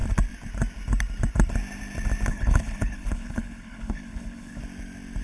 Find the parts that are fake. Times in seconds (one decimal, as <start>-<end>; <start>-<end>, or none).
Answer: 2.3-4.6